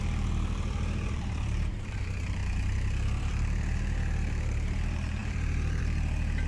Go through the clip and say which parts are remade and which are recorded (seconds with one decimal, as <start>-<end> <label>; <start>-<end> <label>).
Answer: 0.0-2.4 remade; 2.4-3.2 recorded; 3.2-6.5 remade